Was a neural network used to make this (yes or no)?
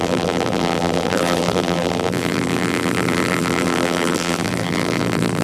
yes